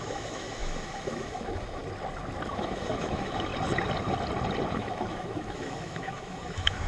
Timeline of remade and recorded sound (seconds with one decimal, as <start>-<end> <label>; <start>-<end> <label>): 0.0-1.8 remade; 1.8-2.5 recorded; 2.5-3.5 remade; 3.5-4.7 recorded; 4.7-6.9 remade